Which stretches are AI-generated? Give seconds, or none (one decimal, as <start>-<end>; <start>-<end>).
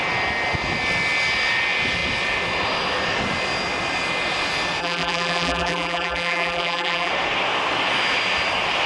4.8-7.1